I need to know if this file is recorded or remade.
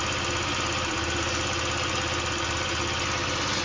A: recorded